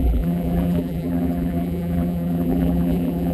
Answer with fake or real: fake